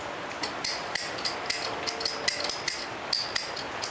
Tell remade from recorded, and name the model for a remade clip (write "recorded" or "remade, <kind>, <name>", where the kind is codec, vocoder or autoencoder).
recorded